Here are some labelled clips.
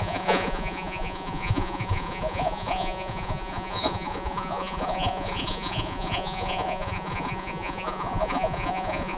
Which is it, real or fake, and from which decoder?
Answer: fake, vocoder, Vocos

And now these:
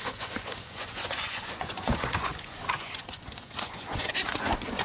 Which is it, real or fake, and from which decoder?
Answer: fake, vocoder, Vocos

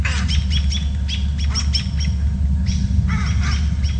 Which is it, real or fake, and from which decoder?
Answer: real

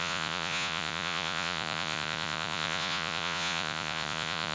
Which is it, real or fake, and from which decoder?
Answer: fake, vocoder, Vocos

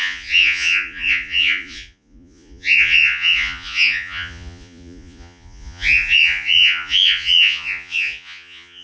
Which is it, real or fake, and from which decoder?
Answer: fake, vocoder, Vocos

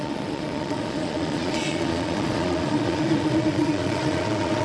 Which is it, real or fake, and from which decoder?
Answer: fake, vocoder, Vocos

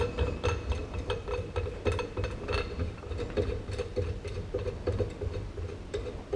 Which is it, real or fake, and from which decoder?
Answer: real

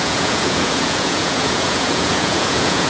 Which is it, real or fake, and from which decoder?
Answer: fake, vocoder, Vocos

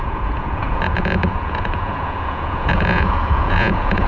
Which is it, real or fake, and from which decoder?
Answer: fake, vocoder, Vocos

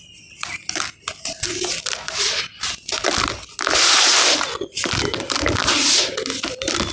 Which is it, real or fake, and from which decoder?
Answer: real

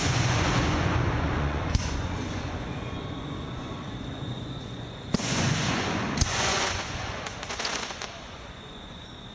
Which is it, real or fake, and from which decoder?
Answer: fake, vocoder, Vocos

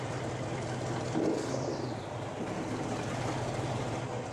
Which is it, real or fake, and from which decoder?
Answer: real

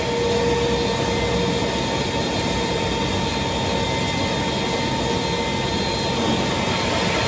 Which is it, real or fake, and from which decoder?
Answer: real